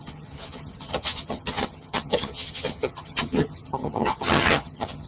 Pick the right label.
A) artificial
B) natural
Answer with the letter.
A